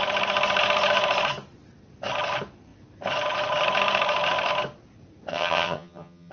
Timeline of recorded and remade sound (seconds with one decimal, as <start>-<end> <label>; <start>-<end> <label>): 0.0-5.3 recorded; 5.3-6.3 remade